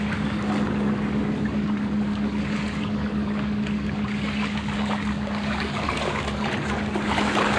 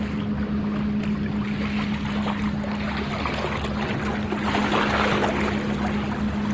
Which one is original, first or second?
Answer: second